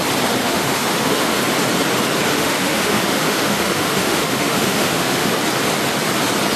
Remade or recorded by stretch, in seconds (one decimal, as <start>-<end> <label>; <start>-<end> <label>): 0.0-0.4 recorded; 0.4-1.4 remade; 1.4-2.3 recorded; 2.3-5.3 remade; 5.3-6.6 recorded